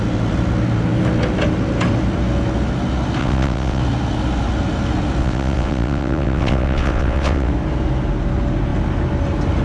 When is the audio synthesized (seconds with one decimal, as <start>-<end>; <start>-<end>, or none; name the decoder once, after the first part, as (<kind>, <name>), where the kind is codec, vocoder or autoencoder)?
3.2-3.8 (vocoder, WaveNeXt); 5.2-7.5

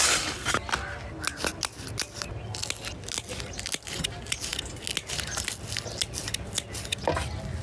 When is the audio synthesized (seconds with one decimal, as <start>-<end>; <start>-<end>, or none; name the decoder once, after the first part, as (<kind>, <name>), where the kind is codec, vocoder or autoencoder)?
none

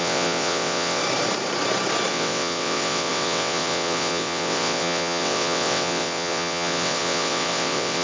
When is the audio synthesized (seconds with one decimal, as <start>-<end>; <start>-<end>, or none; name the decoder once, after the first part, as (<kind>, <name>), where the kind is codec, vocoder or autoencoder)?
0.0-1.0 (vocoder, WaveNeXt); 2.1-8.0

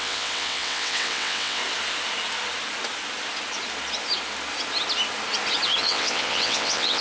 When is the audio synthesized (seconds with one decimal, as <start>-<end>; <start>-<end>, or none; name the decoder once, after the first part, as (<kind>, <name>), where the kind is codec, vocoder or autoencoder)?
0.0-1.6 (vocoder, WaveNeXt); 5.8-7.0

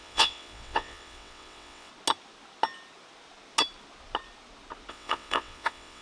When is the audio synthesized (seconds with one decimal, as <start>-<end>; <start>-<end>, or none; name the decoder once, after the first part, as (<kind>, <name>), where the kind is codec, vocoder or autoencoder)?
0.0-1.9 (vocoder, WaveNeXt); 4.9-6.0

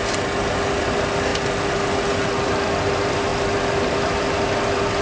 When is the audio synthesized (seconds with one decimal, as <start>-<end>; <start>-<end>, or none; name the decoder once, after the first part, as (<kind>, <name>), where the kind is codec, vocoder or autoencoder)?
none

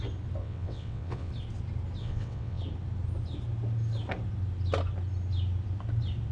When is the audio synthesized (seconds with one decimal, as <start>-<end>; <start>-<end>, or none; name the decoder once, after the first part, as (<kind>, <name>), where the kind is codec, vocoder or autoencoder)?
0.4-1.3 (vocoder, WaveNeXt); 2.0-2.6